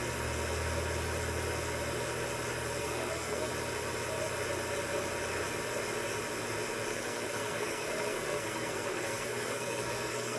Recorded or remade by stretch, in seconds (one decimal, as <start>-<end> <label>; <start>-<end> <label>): 0.0-2.8 recorded; 2.8-3.5 remade; 3.5-6.9 recorded; 6.9-10.4 remade